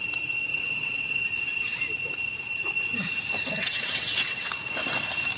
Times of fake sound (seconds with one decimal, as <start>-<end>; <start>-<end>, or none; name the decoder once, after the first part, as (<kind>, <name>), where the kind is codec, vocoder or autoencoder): 0.5-1.2 (vocoder, WaveNeXt); 3.6-4.5